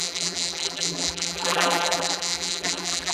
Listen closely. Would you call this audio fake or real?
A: fake